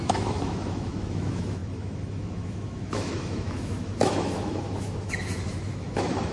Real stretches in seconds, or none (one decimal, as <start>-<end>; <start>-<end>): none